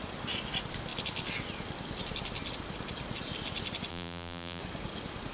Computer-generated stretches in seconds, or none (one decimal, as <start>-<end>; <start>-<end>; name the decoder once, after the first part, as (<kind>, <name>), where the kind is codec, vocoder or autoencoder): 3.9-4.6 (vocoder, BigVGAN v2)